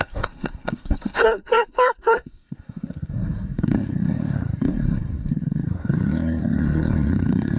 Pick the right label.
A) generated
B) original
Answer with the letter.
A